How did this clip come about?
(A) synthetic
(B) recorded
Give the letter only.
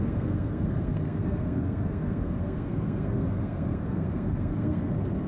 A